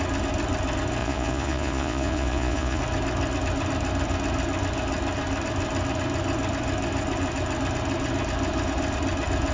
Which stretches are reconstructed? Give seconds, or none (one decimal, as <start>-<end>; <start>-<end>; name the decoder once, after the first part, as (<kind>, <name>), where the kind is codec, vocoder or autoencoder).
1.0-2.8 (vocoder, Vocos)